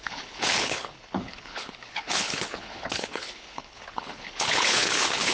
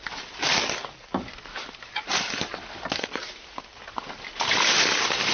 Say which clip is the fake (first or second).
first